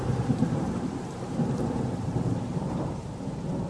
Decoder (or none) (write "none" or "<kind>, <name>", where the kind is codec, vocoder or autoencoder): vocoder, BigVGAN v2